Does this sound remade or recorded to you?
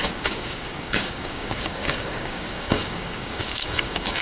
remade